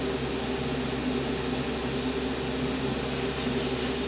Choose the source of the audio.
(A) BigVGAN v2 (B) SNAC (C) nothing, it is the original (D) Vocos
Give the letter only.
C